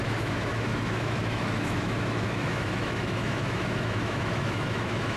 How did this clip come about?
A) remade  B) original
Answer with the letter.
A